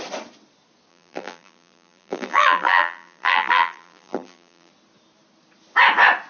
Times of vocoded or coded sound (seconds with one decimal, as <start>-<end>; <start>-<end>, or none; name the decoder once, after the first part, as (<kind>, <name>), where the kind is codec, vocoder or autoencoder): 0.9-4.7 (vocoder, BigVGAN v2)